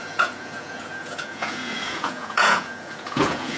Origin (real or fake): fake